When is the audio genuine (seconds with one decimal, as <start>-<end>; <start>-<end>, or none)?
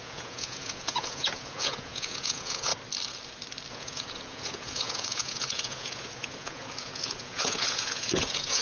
2.7-3.7